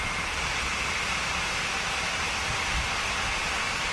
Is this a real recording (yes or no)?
no